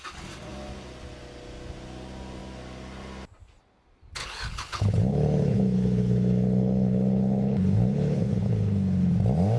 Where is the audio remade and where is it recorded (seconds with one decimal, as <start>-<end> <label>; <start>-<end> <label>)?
0.0-4.2 recorded; 4.2-9.1 remade; 9.1-9.6 recorded